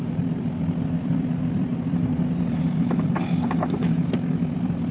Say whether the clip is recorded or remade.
remade